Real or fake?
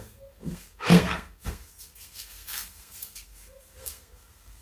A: fake